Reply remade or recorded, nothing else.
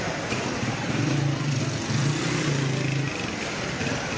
recorded